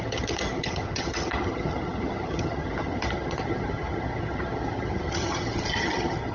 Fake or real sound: fake